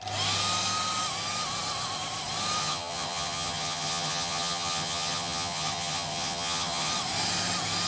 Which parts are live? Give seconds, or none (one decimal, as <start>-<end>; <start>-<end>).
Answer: 0.0-2.6; 6.9-7.9